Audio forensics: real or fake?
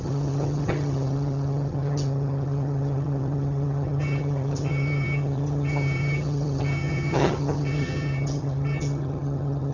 fake